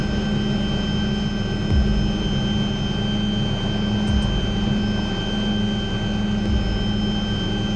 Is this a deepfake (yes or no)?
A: no